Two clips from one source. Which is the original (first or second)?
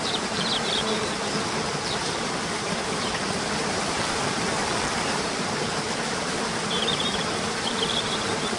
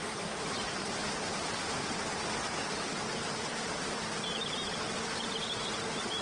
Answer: second